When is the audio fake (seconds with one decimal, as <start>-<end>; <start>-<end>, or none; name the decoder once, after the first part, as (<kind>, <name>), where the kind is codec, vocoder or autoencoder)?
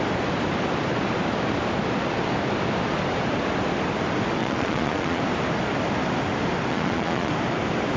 4.4-5.2 (vocoder, Vocos); 6.7-7.3